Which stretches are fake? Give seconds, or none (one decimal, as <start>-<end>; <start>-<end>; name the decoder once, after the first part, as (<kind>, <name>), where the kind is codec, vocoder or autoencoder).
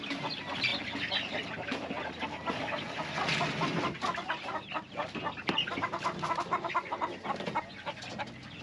none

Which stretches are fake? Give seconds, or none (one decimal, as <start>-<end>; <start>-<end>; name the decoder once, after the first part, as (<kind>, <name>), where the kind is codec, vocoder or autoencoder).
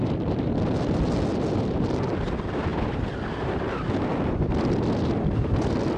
2.7-3.6 (vocoder, BigVGAN v2); 4.1-5.1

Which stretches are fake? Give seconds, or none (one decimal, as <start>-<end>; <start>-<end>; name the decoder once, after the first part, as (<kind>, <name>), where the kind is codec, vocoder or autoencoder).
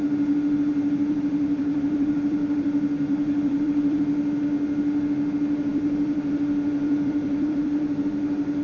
0.7-4.0 (vocoder, BigVGAN v2); 5.7-8.1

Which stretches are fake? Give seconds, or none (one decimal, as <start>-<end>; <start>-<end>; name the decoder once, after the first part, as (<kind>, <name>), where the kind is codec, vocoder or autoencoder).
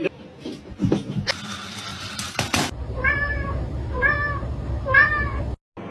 1.9-5.4 (vocoder, BigVGAN v2)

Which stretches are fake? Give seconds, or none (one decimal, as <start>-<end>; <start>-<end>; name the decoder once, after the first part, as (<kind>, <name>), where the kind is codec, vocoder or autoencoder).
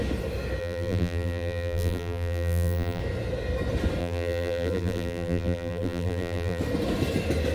0.6-3.0 (vocoder, BigVGAN v2); 4.0-6.6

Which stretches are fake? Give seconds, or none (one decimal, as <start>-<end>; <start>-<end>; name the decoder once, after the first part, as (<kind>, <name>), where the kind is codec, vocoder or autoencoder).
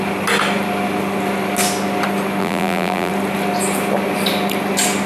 2.4-3.1 (vocoder, BigVGAN v2)